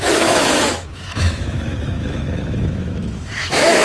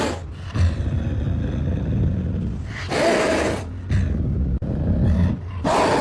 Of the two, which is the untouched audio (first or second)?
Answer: second